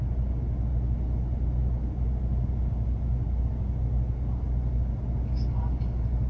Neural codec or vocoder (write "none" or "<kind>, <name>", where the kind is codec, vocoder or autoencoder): none